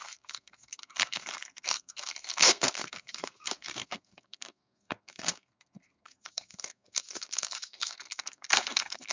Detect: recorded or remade remade